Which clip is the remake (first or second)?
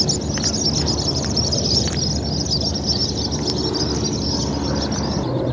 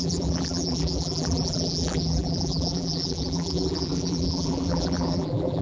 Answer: second